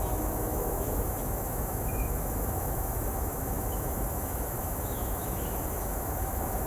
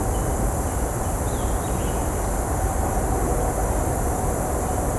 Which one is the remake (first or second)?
first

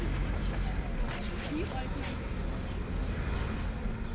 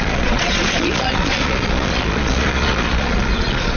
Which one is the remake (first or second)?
second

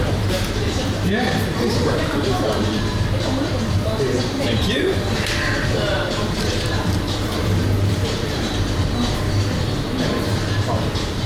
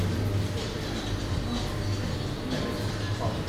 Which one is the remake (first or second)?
first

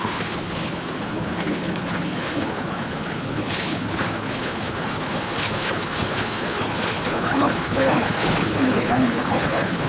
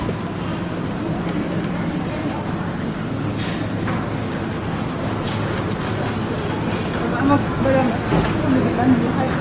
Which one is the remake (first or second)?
first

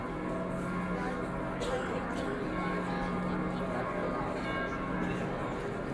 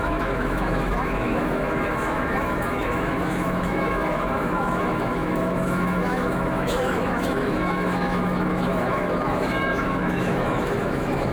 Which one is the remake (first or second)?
second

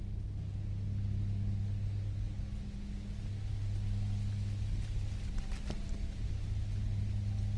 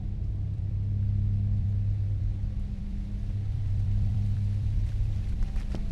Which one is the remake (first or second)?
second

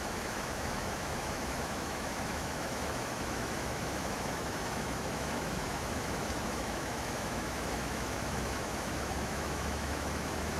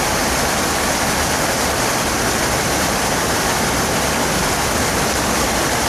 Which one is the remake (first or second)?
first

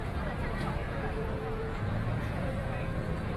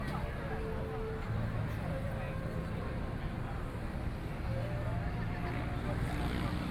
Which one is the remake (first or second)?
first